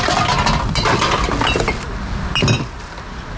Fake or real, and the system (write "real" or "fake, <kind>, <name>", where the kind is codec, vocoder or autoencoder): real